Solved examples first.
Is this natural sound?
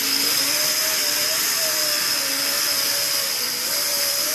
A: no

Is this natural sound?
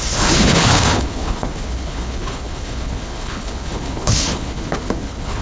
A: no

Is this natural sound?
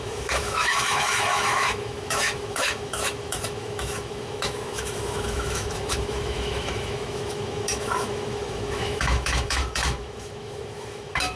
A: no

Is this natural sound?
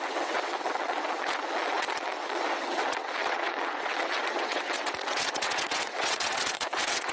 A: no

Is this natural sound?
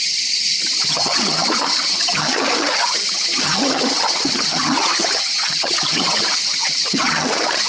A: no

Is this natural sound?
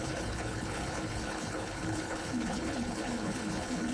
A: no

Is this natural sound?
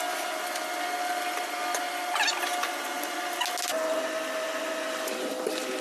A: yes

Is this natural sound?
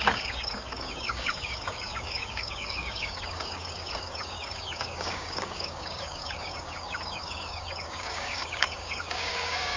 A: no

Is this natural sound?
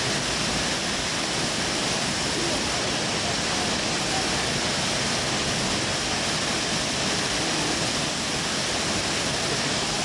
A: yes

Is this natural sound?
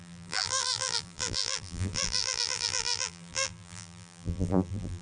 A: no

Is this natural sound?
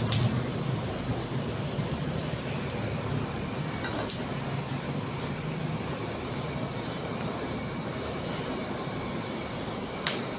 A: yes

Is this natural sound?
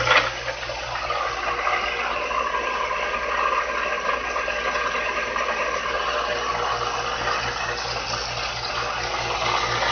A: yes